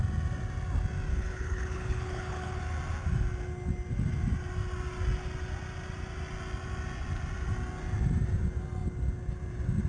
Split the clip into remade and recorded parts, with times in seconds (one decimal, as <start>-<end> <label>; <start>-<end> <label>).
0.0-1.1 recorded; 1.1-2.6 remade; 2.6-9.9 recorded